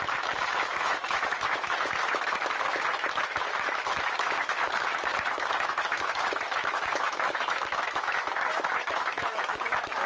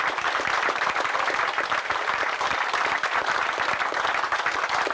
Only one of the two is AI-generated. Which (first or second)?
first